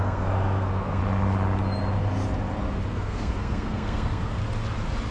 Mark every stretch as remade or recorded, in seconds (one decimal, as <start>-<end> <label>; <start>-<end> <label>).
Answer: 0.0-1.0 remade; 1.0-2.9 recorded; 2.9-4.4 remade; 4.4-5.1 recorded